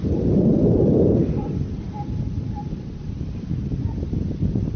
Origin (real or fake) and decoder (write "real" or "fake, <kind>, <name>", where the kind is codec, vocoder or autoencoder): fake, vocoder, BigVGAN v2